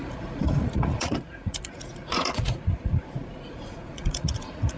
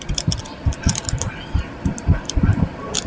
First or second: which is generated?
first